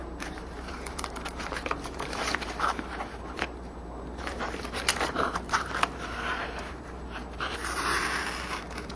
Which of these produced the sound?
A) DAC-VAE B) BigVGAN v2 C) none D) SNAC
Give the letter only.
B